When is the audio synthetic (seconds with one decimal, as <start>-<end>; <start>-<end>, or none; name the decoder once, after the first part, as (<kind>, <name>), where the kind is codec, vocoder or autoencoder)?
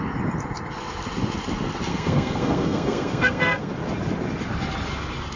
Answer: 1.9-3.7 (codec, SNAC)